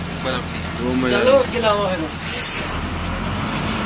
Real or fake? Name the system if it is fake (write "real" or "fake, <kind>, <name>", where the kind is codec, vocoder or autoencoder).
real